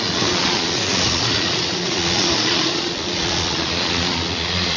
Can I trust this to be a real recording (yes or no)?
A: no